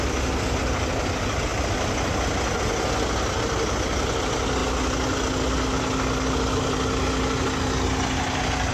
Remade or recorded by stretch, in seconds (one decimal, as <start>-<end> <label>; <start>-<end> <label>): 0.0-8.7 recorded